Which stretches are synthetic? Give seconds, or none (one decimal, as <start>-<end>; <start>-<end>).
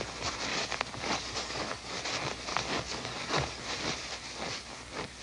0.5-2.0; 2.5-3.6